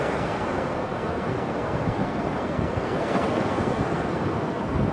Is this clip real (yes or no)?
no